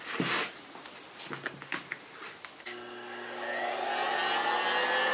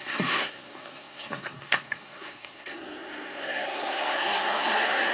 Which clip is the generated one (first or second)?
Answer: second